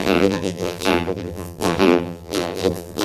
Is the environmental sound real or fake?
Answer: fake